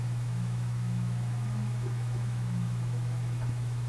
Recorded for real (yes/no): no